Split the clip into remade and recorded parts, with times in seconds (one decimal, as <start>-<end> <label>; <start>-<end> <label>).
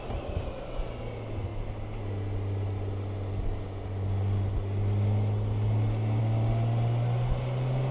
0.0-7.9 recorded